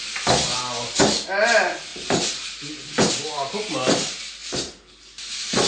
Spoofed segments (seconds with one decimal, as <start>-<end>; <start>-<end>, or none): none